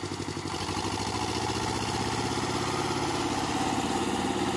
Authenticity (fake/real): real